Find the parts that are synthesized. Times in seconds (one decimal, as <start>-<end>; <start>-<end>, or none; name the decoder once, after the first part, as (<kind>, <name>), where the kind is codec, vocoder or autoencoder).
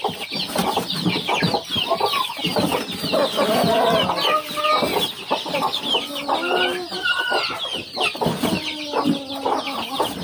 0.6-1.9 (vocoder, BigVGAN v2); 7.7-8.5